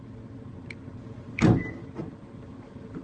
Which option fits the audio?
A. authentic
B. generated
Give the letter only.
A